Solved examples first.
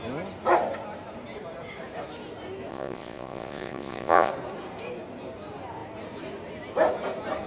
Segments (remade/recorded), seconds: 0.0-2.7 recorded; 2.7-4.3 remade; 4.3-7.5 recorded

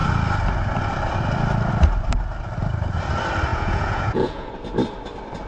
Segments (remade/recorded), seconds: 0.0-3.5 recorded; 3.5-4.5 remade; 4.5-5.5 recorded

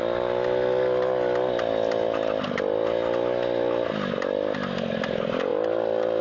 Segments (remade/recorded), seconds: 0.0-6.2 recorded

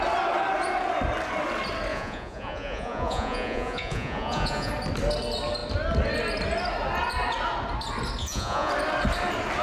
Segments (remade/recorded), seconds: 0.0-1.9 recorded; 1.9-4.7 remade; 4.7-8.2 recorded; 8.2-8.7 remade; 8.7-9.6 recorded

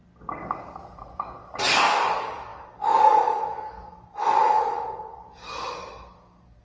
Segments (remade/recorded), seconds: 0.0-1.6 recorded; 1.6-6.6 remade